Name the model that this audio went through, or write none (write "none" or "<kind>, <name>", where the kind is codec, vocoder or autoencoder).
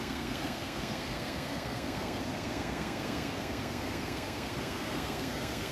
codec, SNAC